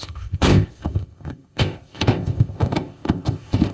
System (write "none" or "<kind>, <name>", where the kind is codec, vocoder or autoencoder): codec, ZipCodec